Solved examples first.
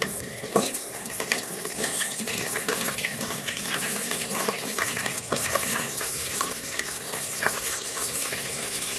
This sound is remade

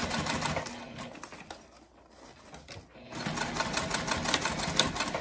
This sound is recorded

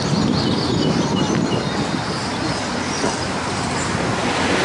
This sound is recorded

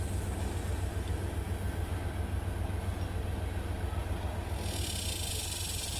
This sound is recorded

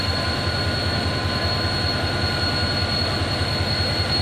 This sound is recorded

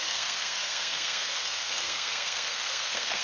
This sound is remade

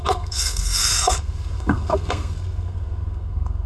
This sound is remade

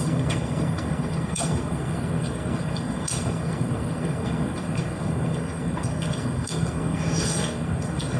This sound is remade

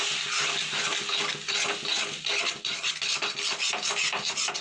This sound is recorded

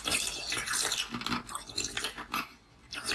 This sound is recorded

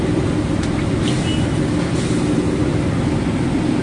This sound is recorded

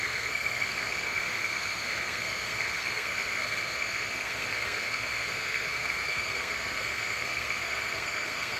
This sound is remade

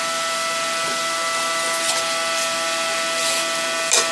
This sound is recorded